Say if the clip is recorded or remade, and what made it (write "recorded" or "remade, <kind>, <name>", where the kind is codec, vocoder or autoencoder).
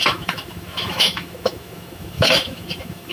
remade, autoencoder, DAC-VAE